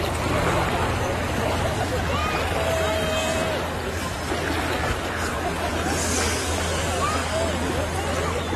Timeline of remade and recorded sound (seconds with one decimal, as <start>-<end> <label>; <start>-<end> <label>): 0.0-8.6 recorded